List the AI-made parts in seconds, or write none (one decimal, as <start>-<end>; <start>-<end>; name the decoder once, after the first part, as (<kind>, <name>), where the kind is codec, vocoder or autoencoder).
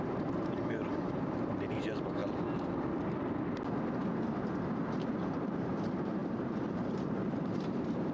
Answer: 0.0-2.2 (vocoder, BigVGAN v2); 4.7-8.1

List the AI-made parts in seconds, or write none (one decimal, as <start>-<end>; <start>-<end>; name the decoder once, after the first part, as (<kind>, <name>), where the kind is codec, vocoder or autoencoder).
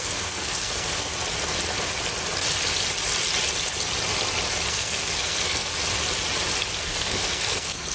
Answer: 0.0-1.1 (codec, SNAC); 4.7-5.7; 6.8-7.9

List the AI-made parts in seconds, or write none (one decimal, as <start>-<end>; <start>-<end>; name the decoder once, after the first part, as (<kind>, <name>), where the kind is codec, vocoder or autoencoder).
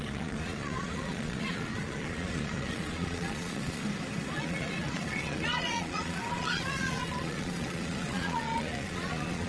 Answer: 0.0-3.8 (vocoder, Vocos); 4.3-9.5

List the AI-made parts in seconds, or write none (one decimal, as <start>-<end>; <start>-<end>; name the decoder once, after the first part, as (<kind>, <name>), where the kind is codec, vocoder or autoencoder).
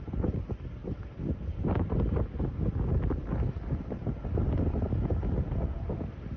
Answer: none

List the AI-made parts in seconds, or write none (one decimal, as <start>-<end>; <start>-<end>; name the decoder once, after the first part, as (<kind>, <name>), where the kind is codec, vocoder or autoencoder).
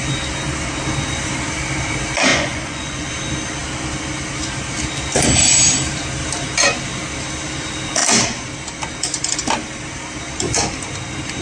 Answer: 2.3-3.1 (vocoder, Vocos)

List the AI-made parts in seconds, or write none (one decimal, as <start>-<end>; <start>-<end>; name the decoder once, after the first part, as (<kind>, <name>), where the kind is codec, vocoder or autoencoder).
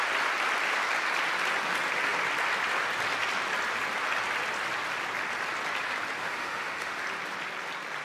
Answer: 6.2-7.0 (autoencoder, DAC-VAE)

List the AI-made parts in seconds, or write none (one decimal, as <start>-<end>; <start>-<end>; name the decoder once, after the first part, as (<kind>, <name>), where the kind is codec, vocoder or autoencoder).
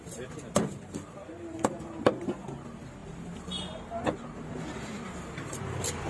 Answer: none